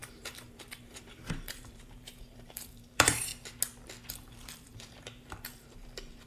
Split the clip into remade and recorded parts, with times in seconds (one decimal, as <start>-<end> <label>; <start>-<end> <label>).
0.0-3.3 remade; 3.3-4.1 recorded; 4.1-6.3 remade